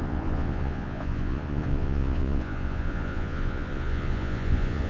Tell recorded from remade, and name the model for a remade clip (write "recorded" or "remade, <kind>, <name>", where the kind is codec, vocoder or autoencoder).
remade, vocoder, Vocos